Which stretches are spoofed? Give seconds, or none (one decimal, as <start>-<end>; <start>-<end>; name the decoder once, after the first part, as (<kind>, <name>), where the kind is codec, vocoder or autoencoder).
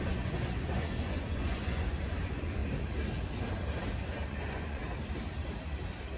0.0-2.6 (vocoder, Vocos); 4.3-4.8